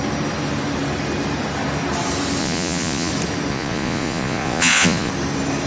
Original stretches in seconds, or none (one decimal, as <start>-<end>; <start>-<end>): 0.0-2.4; 3.1-3.5; 5.1-5.7